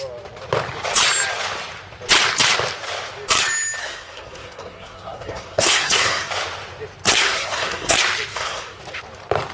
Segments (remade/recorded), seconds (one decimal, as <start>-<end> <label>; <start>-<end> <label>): 0.0-3.8 recorded; 3.8-6.3 remade; 6.3-7.2 recorded; 7.2-7.9 remade; 7.9-8.3 recorded; 8.3-8.8 remade; 8.8-9.5 recorded